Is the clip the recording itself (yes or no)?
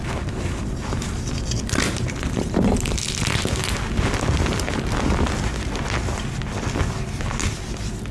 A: yes